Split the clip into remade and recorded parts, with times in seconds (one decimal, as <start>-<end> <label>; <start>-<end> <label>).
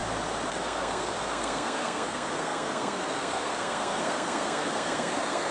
0.0-0.5 recorded; 0.5-5.5 remade